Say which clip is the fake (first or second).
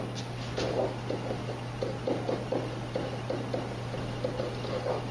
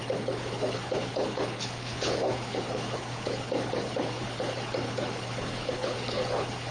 second